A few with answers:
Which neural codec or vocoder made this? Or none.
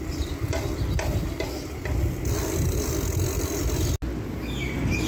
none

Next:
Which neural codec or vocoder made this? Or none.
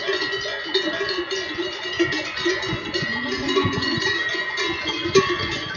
vocoder, Vocos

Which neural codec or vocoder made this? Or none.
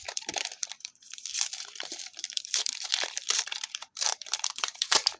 vocoder, BigVGAN v2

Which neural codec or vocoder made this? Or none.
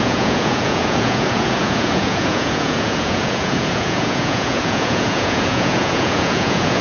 vocoder, Vocos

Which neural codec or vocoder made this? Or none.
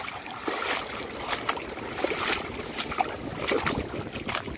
none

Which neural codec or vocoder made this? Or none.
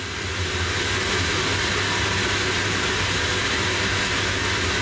none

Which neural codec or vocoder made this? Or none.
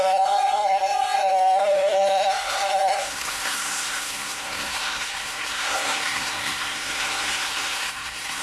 codec, SNAC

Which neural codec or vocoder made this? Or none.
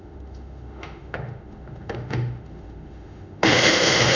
autoencoder, DAC-VAE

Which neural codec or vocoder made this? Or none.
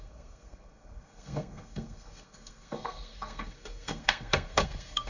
codec, SNAC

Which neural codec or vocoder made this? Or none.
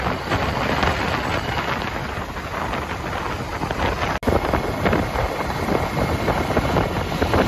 none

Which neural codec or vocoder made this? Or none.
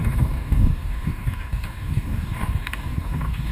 codec, DAC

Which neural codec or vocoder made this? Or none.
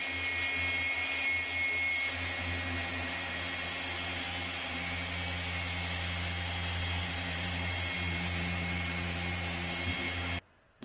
none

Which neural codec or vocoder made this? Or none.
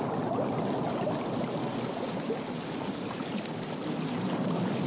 none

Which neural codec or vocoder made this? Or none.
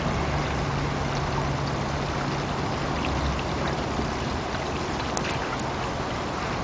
none